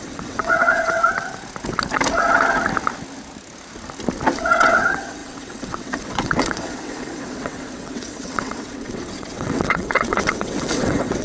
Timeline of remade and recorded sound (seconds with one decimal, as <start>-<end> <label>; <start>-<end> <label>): 0.0-1.0 remade; 1.0-4.4 recorded; 4.4-11.2 remade